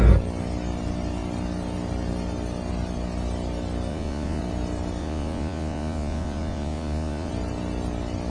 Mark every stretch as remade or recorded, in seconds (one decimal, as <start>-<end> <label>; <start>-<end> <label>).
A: 0.0-3.9 recorded; 3.9-4.4 remade; 4.4-5.0 recorded; 5.0-7.3 remade; 7.3-8.3 recorded